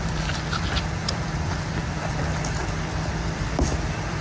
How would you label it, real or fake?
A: fake